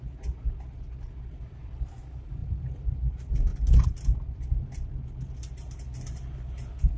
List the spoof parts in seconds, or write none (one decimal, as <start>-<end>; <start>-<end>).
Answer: 2.4-2.9